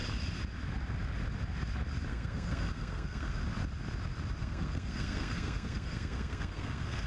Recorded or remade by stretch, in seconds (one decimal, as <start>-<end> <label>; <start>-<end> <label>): 0.0-2.1 recorded; 2.1-3.4 remade; 3.4-4.4 recorded; 4.4-7.1 remade